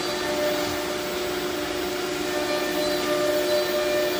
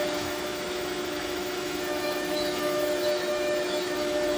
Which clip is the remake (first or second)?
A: second